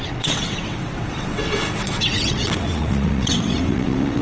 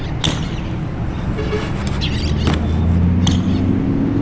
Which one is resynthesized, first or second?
first